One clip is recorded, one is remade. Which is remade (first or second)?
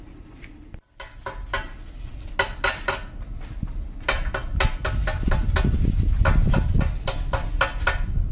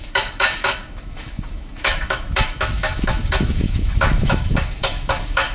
second